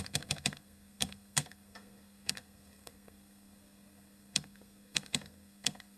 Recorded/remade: remade